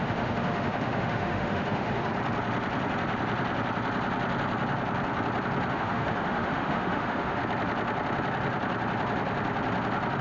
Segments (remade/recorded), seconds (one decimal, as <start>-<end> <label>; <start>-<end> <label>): 0.0-2.1 remade; 2.1-5.7 recorded; 5.7-7.4 remade; 7.4-10.2 recorded